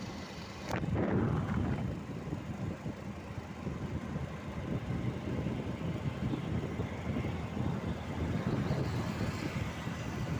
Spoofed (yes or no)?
no